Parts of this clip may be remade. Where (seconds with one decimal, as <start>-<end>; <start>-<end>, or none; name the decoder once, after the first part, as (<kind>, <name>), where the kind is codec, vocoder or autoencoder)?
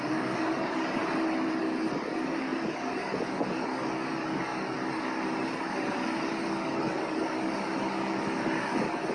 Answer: 0.0-1.0 (codec, DAC); 1.6-9.1